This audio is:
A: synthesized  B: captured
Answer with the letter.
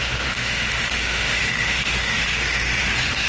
A